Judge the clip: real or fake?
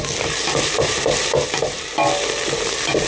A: real